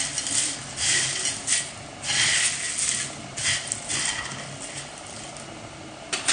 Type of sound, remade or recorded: recorded